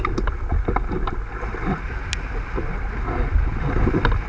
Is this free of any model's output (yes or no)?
yes